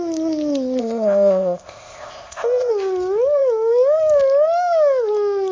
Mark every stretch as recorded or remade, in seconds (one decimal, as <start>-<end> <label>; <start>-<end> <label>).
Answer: 0.0-0.8 recorded; 0.8-2.7 remade; 2.7-5.5 recorded